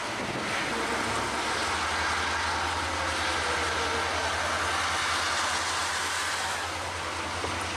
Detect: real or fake real